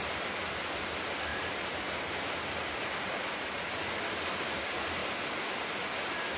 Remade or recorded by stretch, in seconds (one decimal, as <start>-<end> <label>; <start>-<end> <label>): 0.0-6.4 recorded